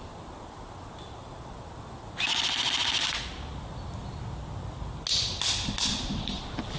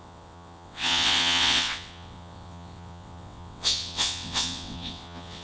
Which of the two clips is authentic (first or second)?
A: first